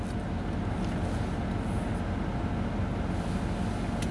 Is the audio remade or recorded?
recorded